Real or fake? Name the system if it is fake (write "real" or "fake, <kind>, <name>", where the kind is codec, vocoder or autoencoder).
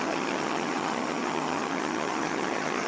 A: fake, vocoder, HiFi-GAN